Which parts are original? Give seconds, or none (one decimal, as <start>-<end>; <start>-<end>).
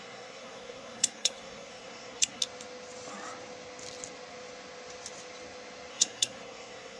2.4-5.9